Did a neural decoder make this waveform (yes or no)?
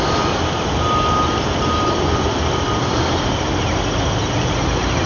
no